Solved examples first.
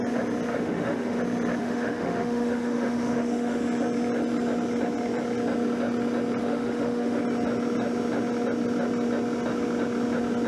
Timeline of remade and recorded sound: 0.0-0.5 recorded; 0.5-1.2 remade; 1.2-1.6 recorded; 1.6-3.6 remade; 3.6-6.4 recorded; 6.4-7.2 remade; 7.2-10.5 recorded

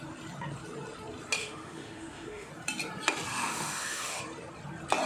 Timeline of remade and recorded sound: 0.0-1.4 recorded; 1.4-2.5 remade; 2.5-3.3 recorded; 3.3-4.2 remade; 4.2-5.1 recorded

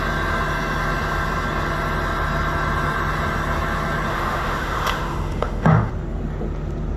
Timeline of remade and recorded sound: 0.0-4.1 recorded; 4.1-5.9 remade; 5.9-7.0 recorded

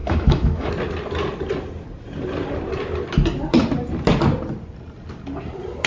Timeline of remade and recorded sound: 0.0-0.7 remade; 0.7-5.9 recorded

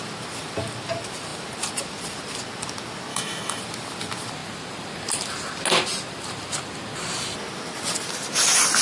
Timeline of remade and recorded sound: 0.0-3.1 recorded; 3.1-3.6 remade; 3.6-8.8 recorded

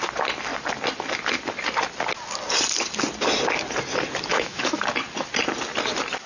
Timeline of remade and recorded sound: 0.0-4.3 recorded; 4.3-4.8 remade; 4.8-6.3 recorded

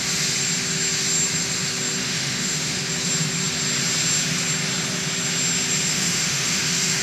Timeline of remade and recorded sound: 0.0-2.0 recorded; 2.0-2.8 remade; 2.8-5.9 recorded; 5.9-6.6 remade; 6.6-7.0 recorded

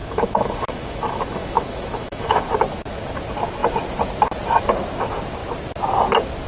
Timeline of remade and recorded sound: 0.0-2.4 remade; 2.4-6.5 recorded